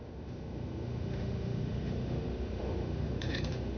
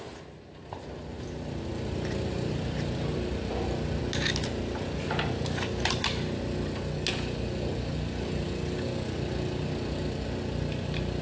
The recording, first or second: second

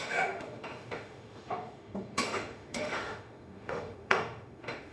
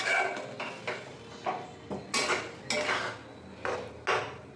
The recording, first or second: second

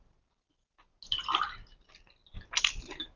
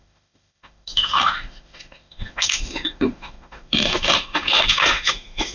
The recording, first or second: first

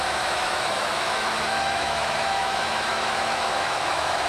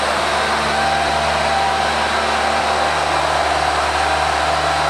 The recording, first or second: second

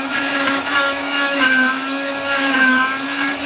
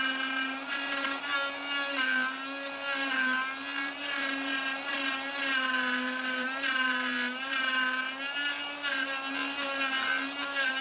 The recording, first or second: second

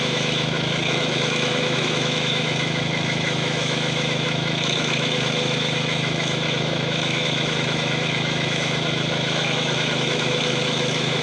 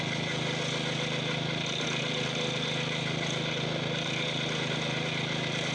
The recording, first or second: second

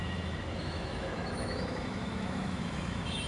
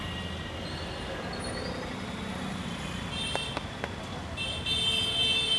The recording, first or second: second